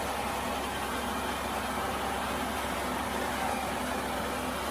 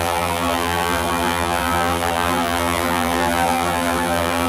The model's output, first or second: second